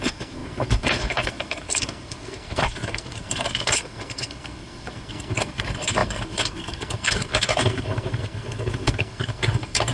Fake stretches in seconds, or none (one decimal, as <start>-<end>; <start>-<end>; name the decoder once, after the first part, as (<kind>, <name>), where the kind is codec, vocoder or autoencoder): 0.0-9.9 (codec, SNAC)